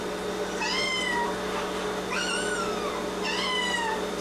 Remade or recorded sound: recorded